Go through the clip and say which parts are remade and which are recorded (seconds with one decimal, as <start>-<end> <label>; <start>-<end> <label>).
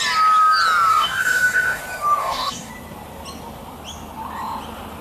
0.0-0.9 recorded; 0.9-1.8 remade; 1.8-2.2 recorded; 2.2-2.7 remade; 2.7-5.0 recorded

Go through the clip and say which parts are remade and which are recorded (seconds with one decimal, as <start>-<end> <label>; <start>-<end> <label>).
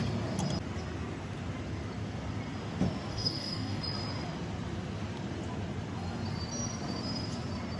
0.0-3.1 recorded; 3.1-3.8 remade; 3.8-7.8 recorded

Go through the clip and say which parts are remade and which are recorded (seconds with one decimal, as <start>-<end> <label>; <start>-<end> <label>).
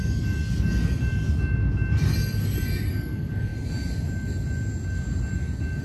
0.0-0.4 remade; 0.4-2.9 recorded; 2.9-3.5 remade; 3.5-5.8 recorded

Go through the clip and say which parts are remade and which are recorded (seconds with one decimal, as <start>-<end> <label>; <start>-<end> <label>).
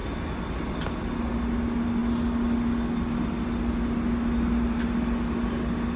0.0-6.0 recorded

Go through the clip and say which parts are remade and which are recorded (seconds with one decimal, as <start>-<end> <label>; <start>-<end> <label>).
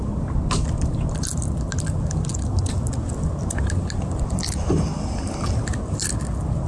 0.0-6.7 recorded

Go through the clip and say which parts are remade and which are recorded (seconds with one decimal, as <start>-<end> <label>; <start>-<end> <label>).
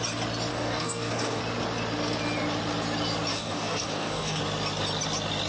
0.0-0.5 recorded; 0.5-1.4 remade; 1.4-3.3 recorded; 3.3-4.4 remade; 4.4-5.5 recorded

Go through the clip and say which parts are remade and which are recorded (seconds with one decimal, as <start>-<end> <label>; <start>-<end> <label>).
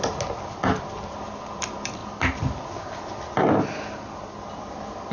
0.0-5.1 recorded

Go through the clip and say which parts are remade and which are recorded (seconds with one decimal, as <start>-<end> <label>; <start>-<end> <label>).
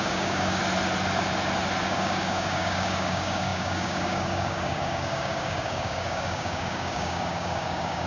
0.0-0.6 remade; 0.6-1.8 recorded; 1.8-8.1 remade